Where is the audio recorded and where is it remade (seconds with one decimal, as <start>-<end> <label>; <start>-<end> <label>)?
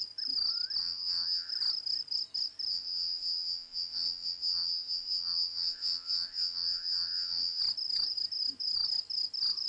0.0-0.8 recorded; 0.8-1.5 remade; 1.5-2.7 recorded; 2.7-7.6 remade; 7.6-9.7 recorded